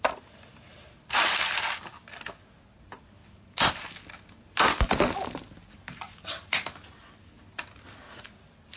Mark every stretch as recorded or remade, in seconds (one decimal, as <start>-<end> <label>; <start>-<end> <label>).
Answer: 0.0-8.8 recorded